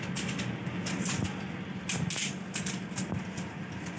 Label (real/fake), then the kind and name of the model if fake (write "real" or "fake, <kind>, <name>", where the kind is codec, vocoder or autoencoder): real